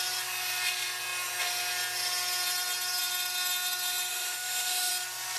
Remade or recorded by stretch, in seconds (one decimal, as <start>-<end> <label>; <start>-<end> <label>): 0.0-4.1 recorded; 4.1-4.9 remade; 4.9-5.4 recorded